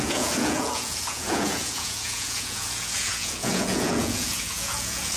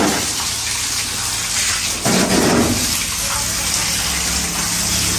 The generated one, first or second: first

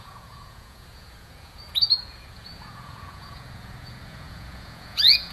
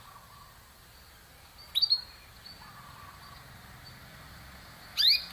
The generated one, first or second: first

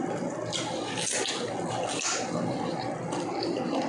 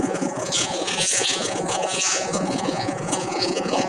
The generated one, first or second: second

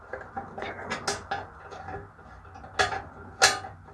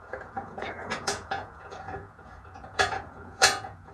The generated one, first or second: second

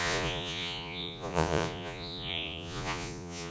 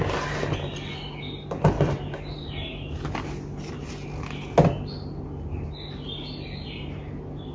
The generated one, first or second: first